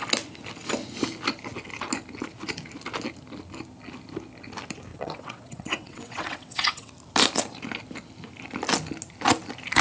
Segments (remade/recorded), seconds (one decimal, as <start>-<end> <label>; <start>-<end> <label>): 0.0-4.9 recorded; 4.9-6.9 remade; 6.9-9.8 recorded

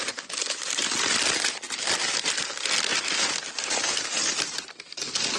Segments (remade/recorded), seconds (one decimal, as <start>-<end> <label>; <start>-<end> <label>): 0.0-5.4 recorded

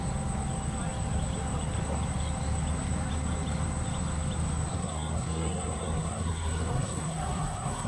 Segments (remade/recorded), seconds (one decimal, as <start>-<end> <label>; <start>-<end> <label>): 0.0-4.7 recorded; 4.7-7.9 remade